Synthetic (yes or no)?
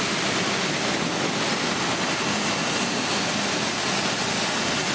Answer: no